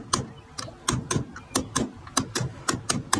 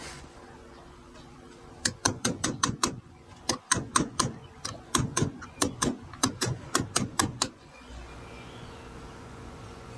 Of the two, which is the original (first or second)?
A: first